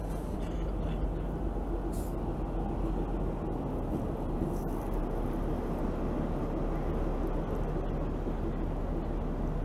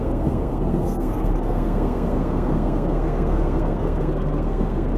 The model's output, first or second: second